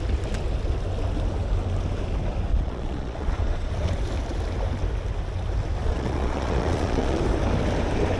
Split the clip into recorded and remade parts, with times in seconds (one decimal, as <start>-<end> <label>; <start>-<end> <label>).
0.0-2.5 recorded; 2.5-3.7 remade; 3.7-5.8 recorded; 5.8-7.2 remade; 7.2-8.2 recorded